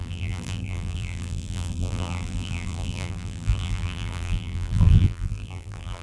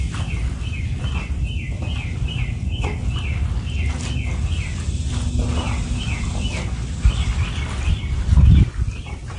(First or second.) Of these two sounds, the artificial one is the first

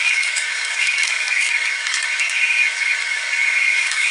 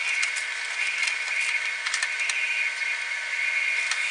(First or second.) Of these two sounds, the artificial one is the first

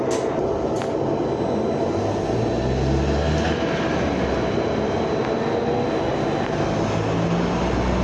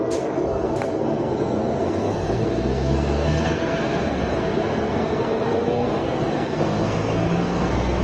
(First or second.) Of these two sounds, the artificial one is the second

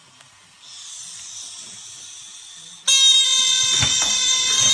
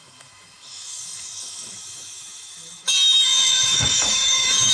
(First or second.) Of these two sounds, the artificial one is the second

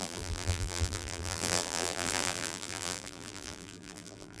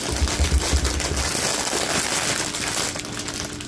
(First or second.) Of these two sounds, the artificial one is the first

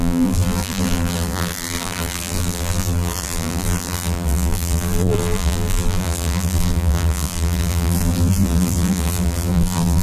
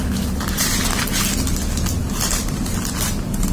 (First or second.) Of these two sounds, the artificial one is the first